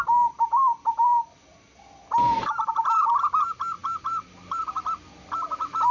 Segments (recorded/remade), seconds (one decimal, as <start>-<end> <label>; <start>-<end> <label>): 0.0-5.9 recorded